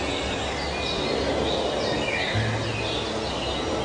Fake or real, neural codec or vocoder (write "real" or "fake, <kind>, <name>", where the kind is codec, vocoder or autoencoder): real